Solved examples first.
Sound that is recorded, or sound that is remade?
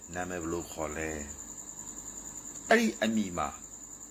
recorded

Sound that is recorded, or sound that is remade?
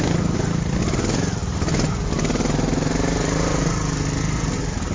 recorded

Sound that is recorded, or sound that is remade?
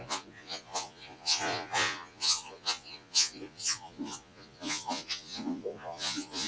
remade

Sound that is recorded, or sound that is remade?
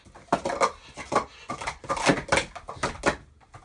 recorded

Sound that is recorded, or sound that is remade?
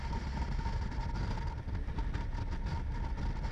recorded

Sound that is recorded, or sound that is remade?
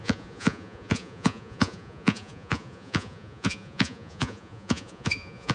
remade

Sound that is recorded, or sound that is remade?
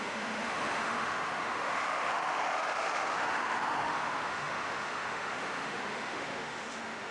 remade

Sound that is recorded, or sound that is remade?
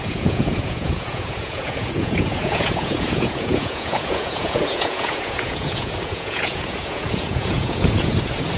remade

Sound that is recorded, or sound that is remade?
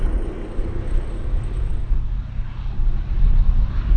recorded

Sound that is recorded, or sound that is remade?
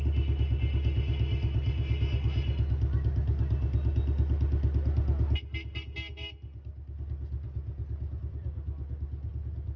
recorded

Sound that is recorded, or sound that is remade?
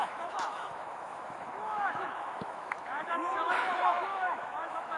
remade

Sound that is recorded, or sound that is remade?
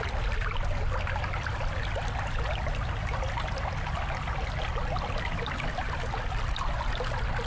recorded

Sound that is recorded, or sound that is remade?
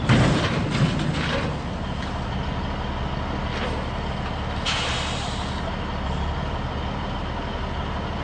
recorded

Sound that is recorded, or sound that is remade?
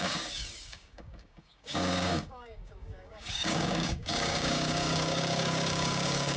remade